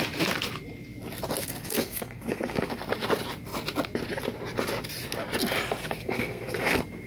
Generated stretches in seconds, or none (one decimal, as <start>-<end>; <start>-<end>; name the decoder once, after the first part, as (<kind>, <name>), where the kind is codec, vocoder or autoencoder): 1.4-2.8 (codec, SNAC); 5.8-7.1